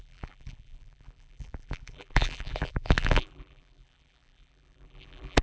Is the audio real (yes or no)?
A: no